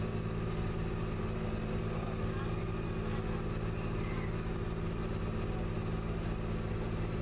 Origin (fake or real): real